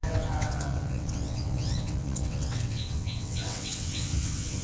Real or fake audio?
fake